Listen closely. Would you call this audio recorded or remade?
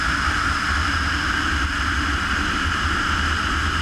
recorded